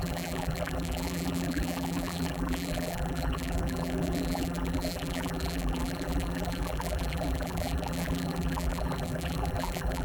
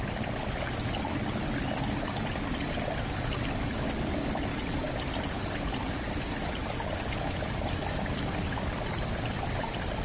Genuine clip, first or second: second